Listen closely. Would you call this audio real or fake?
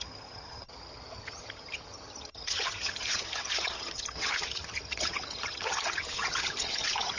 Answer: fake